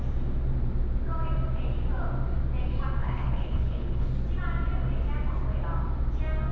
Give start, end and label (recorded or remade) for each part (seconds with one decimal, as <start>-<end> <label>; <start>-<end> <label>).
0.0-3.0 recorded; 3.0-4.1 remade; 4.1-6.5 recorded